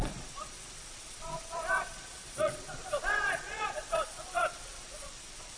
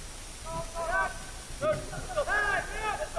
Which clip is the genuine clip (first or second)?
second